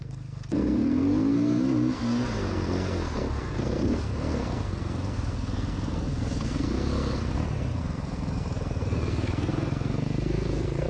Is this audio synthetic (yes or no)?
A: yes